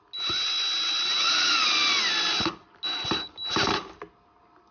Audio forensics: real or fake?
real